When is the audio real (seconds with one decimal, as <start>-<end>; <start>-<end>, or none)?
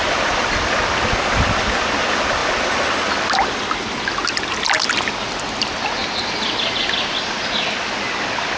0.0-8.6